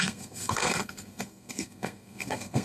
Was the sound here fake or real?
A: fake